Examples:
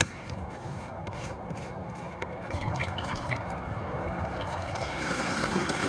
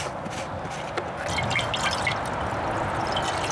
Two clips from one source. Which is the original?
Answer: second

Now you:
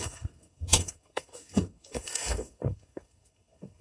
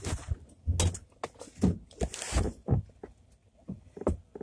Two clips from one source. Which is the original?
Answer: second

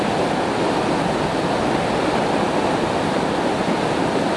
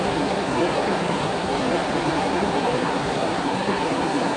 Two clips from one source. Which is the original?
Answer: first